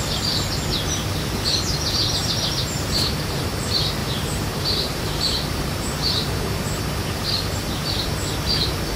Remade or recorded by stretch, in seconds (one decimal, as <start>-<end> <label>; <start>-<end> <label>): 0.0-2.2 recorded; 2.2-3.5 remade; 3.5-4.0 recorded; 4.0-6.8 remade; 6.8-9.0 recorded